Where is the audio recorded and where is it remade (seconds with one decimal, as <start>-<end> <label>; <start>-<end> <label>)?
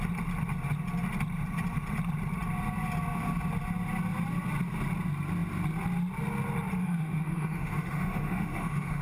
0.0-6.8 recorded; 6.8-9.0 remade